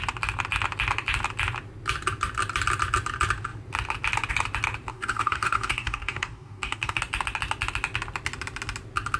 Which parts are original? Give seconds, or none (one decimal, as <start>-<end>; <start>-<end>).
0.0-4.9; 7.0-9.2